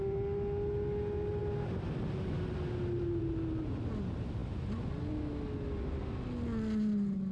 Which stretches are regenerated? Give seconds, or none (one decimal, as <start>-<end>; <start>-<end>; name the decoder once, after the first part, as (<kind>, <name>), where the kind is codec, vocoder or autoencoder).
none